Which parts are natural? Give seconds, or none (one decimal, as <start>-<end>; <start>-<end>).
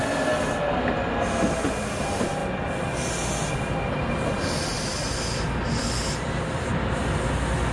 0.0-7.7